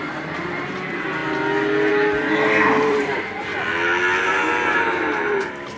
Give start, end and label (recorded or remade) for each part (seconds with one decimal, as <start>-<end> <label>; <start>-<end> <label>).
0.0-1.2 remade; 1.2-1.9 recorded; 1.9-3.5 remade; 3.5-4.2 recorded; 4.2-5.8 remade